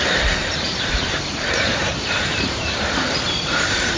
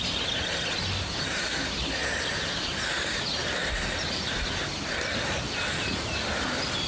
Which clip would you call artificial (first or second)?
first